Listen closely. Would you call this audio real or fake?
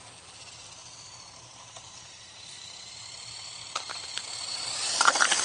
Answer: fake